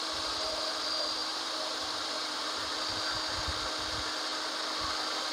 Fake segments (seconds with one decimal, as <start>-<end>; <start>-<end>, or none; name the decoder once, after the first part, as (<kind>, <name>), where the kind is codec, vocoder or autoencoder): 1.2-2.7 (vocoder, BigVGAN v2)